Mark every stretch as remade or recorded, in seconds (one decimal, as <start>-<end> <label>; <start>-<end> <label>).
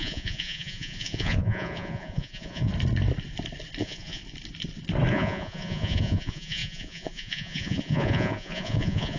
0.0-2.7 remade; 2.7-3.8 recorded; 3.8-4.2 remade; 4.2-5.1 recorded; 5.1-9.2 remade